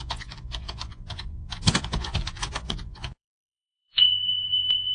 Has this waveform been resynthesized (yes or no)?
yes